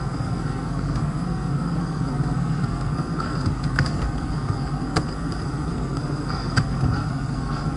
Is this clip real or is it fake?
fake